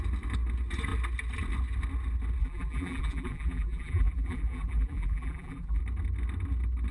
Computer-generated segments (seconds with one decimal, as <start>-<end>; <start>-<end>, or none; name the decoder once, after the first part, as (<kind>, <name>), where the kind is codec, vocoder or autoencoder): 2.4-5.8 (vocoder, BigVGAN v2)